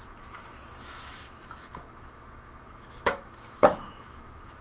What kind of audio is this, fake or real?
fake